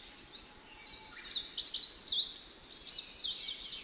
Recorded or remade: recorded